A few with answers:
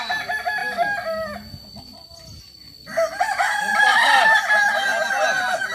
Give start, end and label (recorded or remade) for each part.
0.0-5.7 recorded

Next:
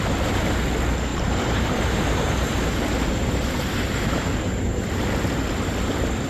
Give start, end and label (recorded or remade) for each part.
0.0-1.1 recorded; 1.1-4.9 remade; 4.9-6.3 recorded